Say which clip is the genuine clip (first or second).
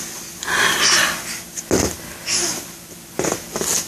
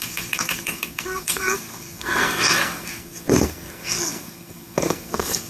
first